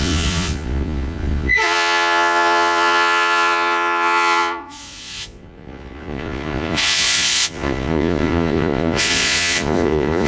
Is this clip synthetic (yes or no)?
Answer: yes